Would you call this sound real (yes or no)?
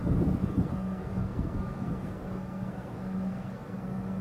no